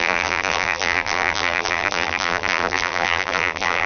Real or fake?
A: fake